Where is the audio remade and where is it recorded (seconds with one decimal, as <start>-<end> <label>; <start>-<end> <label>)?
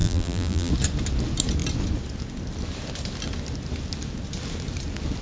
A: 0.0-0.7 remade; 0.7-5.2 recorded